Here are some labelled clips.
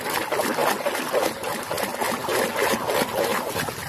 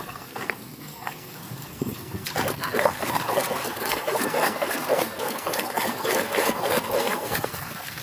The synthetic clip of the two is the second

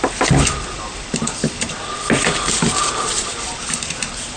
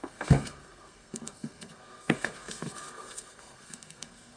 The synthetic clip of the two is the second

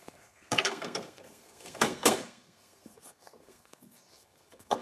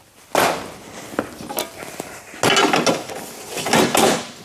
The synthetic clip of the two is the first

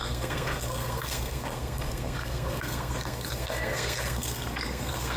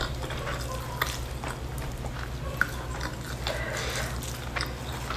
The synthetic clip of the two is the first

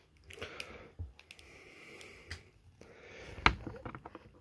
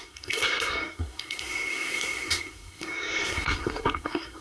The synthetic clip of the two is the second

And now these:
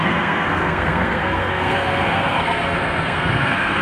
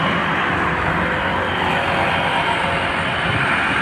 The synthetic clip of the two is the first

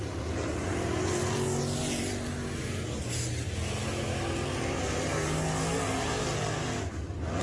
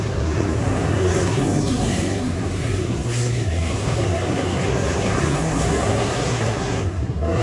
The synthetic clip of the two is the second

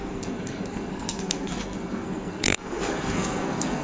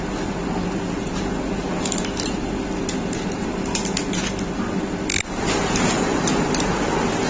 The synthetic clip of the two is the first